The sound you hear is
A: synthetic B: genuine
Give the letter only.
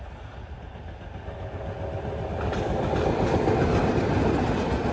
B